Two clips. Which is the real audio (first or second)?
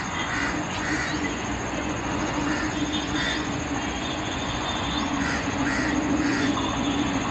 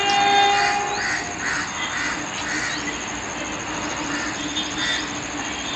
second